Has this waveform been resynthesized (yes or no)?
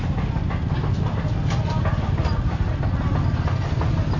no